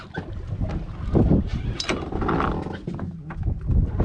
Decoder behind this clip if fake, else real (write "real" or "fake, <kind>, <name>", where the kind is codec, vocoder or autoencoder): real